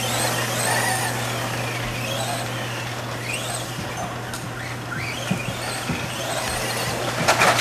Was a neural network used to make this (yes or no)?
no